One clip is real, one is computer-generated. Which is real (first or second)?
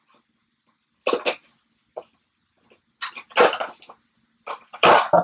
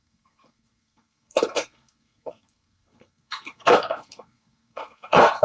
first